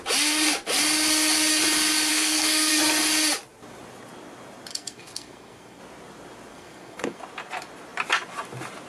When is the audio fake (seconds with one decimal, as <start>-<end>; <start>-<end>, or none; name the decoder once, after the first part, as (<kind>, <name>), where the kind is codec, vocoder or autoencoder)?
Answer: 2.1-2.7 (codec, SNAC); 4.7-5.8; 6.5-7.2